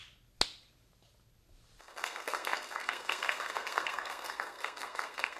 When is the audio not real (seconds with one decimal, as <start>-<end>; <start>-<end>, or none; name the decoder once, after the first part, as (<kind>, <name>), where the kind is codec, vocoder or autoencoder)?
1.8-5.4 (codec, SNAC)